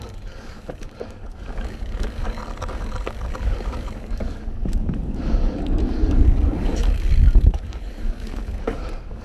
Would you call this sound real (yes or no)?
no